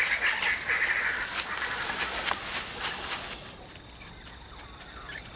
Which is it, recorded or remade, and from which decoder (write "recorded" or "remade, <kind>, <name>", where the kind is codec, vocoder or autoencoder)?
recorded